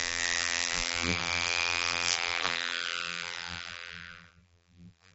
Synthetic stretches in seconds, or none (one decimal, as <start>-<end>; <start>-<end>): 0.0-5.1